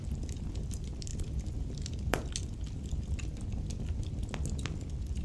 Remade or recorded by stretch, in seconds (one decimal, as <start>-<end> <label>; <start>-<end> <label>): 0.0-5.2 recorded